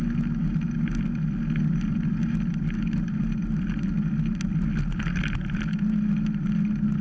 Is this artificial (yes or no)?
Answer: no